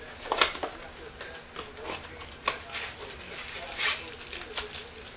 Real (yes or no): yes